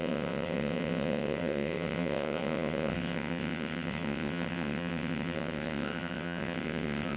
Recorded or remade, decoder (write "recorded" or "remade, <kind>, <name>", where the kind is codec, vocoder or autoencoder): remade, vocoder, WaveNeXt